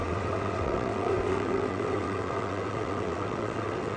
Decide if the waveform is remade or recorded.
remade